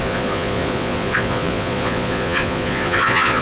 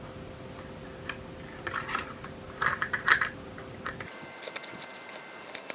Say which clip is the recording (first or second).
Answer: second